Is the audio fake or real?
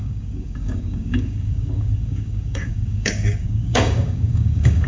fake